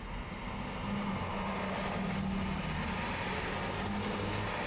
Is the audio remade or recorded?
recorded